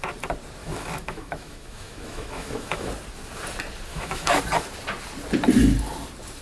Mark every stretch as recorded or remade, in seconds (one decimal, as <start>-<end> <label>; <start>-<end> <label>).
0.0-0.6 recorded; 0.6-2.9 remade; 2.9-3.9 recorded; 3.9-4.4 remade; 4.4-6.4 recorded